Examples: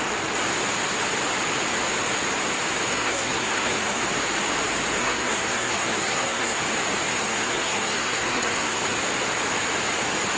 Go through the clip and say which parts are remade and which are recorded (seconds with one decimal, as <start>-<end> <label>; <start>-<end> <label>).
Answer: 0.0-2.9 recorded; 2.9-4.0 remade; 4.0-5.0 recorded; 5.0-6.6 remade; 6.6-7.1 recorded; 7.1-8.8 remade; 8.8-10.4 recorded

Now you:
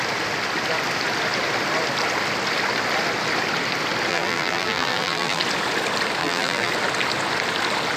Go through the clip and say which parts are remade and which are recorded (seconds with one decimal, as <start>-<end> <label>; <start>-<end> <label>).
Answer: 0.0-4.1 recorded; 4.1-5.4 remade; 5.4-6.2 recorded; 6.2-6.7 remade; 6.7-8.0 recorded

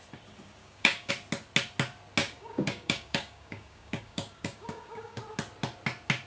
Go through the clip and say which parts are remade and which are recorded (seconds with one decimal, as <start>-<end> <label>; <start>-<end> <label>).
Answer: 0.0-0.6 recorded; 0.6-1.1 remade; 1.1-2.2 recorded; 2.2-5.2 remade; 5.2-6.3 recorded

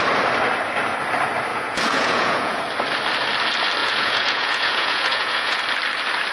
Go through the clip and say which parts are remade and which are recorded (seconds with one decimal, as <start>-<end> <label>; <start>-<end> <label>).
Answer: 0.0-1.5 recorded; 1.5-2.6 remade; 2.6-3.8 recorded; 3.8-5.6 remade; 5.6-6.3 recorded

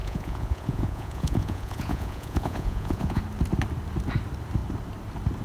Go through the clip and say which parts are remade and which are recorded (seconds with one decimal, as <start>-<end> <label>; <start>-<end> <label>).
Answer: 0.0-3.2 remade; 3.2-5.4 recorded

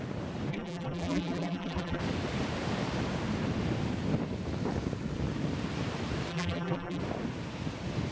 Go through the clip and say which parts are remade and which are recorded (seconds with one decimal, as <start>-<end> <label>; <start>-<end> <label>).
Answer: 0.0-0.5 recorded; 0.5-2.0 remade; 2.0-6.3 recorded; 6.3-7.0 remade; 7.0-8.1 recorded

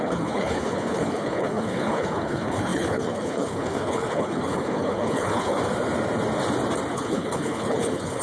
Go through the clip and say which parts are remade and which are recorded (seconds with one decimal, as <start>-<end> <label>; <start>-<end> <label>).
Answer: 0.0-5.6 remade; 5.6-6.9 recorded; 6.9-8.2 remade